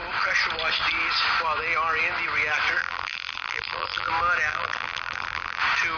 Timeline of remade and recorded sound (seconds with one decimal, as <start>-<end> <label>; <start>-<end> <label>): 0.0-2.8 recorded; 2.8-4.1 remade; 4.1-4.5 recorded; 4.5-5.6 remade; 5.6-6.0 recorded